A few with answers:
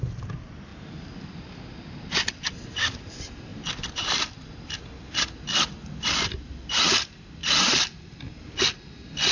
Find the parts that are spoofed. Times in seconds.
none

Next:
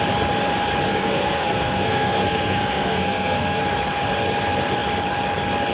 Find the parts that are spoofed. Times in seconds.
0.9-3.6 (codec, SNAC)

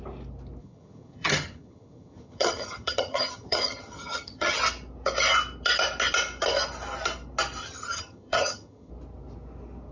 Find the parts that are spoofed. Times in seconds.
0.6-4.6 (vocoder, HiFi-GAN); 7.6-8.9

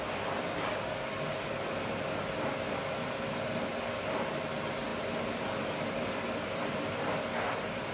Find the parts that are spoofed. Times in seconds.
none

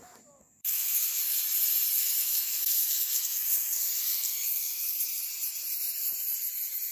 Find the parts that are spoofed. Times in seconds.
0.4-1.4 (codec, SNAC); 2.0-5.0